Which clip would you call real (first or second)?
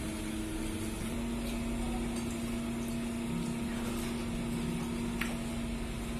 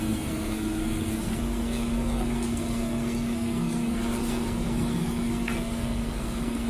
first